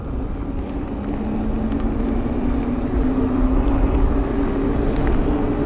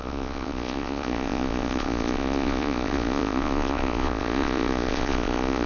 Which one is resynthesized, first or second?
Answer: second